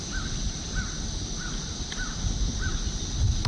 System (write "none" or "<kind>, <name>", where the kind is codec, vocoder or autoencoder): none